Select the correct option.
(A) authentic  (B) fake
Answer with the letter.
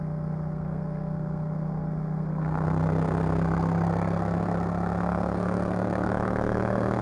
B